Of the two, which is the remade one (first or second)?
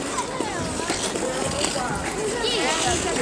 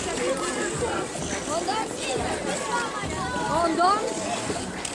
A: second